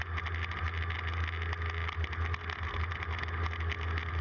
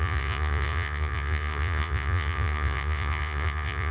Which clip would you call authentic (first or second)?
first